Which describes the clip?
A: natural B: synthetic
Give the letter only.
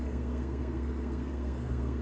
B